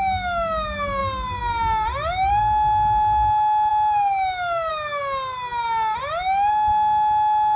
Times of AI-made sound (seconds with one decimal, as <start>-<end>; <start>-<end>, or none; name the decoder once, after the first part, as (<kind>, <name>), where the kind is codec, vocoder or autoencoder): none